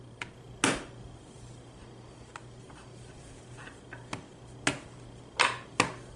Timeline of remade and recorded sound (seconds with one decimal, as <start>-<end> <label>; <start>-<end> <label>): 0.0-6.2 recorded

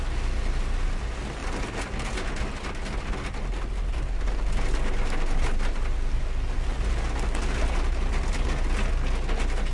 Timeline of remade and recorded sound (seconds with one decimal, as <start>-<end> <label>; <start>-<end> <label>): 0.0-9.7 recorded

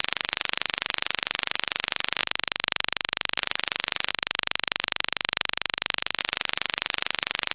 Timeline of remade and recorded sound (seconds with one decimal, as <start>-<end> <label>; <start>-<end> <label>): 0.0-2.2 recorded; 2.2-3.4 remade; 3.4-4.1 recorded; 4.1-6.2 remade; 6.2-7.5 recorded

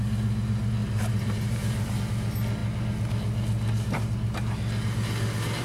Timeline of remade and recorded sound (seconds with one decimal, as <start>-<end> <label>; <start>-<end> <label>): 0.0-0.8 recorded; 0.8-2.0 remade; 2.0-5.6 recorded